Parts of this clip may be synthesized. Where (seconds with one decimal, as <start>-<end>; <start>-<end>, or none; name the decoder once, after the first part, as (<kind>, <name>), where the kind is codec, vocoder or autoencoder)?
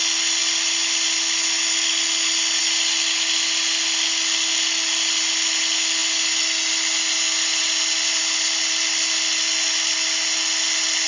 none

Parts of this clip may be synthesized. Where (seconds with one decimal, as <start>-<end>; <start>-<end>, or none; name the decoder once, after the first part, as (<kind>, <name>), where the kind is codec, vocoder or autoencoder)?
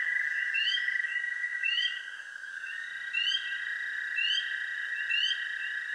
0.0-2.9 (codec, DAC)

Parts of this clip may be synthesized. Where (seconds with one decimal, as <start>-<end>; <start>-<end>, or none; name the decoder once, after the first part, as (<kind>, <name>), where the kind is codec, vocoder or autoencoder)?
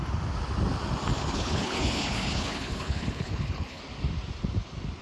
1.2-3.8 (codec, HILCodec)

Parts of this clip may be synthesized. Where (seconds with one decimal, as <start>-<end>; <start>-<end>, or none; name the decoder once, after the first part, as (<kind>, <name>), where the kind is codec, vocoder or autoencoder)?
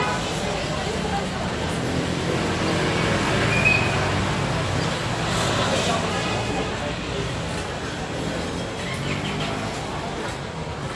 6.1-6.7 (codec, SNAC)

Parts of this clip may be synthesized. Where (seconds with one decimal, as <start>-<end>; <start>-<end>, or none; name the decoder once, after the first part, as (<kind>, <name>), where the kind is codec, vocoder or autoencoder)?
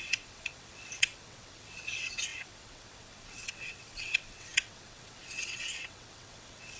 0.0-6.8 (vocoder, WaveNeXt)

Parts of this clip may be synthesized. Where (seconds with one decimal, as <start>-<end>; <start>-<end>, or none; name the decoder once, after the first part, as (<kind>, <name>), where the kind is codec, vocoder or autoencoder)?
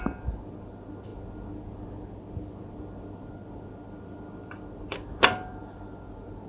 none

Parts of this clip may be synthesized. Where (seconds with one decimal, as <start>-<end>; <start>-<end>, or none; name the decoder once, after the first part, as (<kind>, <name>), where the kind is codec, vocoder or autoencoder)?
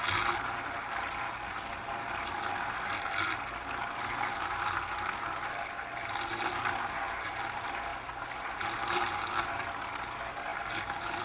none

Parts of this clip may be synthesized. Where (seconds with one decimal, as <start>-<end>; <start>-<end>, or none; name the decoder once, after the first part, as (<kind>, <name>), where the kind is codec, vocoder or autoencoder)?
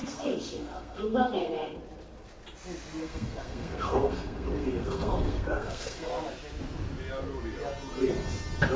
0.0-1.8 (codec, SNAC); 3.0-6.1